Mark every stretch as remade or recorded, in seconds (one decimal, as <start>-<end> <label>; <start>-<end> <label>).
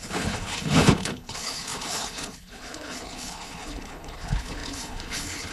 0.0-5.5 remade